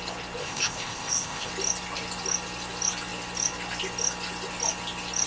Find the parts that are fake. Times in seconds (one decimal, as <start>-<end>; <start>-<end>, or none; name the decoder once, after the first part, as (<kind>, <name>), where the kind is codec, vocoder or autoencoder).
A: 0.4-1.5 (codec, ZipCodec)